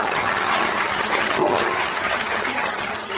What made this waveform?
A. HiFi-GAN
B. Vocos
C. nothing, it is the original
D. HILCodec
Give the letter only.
A